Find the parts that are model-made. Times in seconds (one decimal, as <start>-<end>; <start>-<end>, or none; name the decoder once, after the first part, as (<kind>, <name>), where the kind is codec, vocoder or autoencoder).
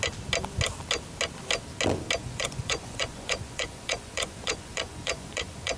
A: 2.2-5.8 (vocoder, Vocos)